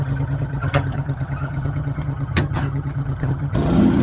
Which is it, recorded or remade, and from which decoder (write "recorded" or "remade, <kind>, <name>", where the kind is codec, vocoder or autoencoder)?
remade, vocoder, HiFi-GAN